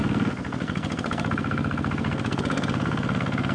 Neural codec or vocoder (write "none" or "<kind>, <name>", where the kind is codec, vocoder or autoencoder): codec, SNAC